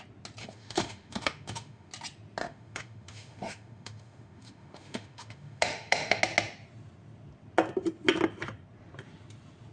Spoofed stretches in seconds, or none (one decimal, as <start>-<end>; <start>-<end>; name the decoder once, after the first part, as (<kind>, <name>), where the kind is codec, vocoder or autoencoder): 0.4-1.9 (autoencoder, DAC-VAE); 2.4-6.2